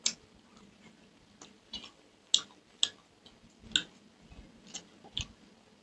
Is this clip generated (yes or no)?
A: no